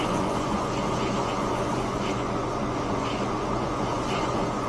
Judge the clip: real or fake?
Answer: fake